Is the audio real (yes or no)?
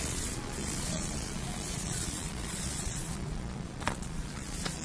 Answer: no